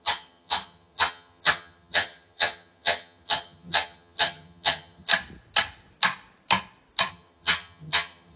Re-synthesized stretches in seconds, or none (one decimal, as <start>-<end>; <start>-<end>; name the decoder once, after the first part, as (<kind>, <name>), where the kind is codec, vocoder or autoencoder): 0.0-5.1 (vocoder, HiFi-GAN); 7.1-8.4

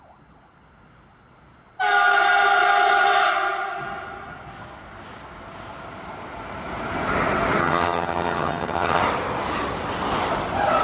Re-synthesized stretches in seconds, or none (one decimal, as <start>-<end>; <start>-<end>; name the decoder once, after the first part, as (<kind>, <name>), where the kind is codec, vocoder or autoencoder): 7.6-9.0 (vocoder, HiFi-GAN)

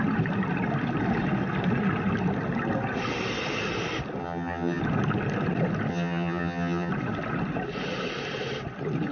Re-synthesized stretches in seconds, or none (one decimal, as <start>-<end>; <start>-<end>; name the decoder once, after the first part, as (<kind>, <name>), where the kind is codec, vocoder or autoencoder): 4.2-4.8 (vocoder, HiFi-GAN); 5.9-6.9

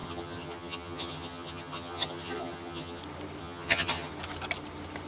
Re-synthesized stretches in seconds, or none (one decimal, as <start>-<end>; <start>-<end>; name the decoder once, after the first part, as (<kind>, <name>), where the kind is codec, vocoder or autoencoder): 0.0-3.0 (vocoder, HiFi-GAN); 3.4-4.1

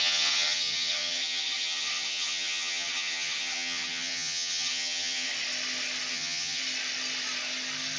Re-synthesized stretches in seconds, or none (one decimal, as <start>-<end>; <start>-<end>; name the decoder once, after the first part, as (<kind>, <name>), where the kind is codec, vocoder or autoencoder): 0.0-5.3 (vocoder, HiFi-GAN); 6.1-6.6

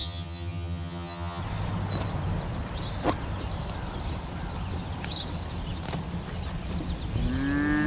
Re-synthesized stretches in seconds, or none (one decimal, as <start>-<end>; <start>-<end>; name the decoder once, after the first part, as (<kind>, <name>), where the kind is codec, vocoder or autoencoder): 0.0-1.4 (vocoder, HiFi-GAN)

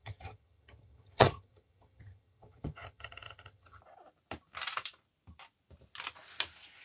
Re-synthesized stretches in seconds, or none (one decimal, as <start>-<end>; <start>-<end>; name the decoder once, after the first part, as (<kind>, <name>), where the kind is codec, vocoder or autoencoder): 0.0-3.8 (vocoder, HiFi-GAN)